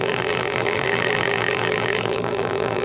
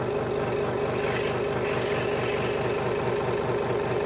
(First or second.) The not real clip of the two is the first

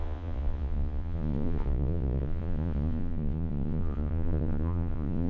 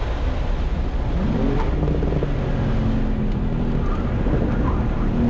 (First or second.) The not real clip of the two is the first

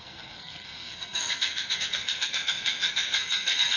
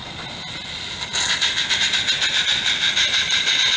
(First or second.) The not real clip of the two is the first